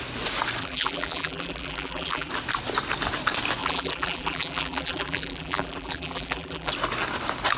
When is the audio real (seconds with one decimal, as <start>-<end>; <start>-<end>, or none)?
0.0-0.6; 2.3-3.6; 6.7-7.6